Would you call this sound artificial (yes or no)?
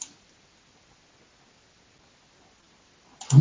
no